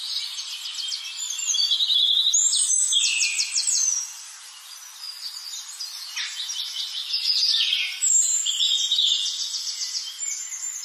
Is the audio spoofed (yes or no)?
no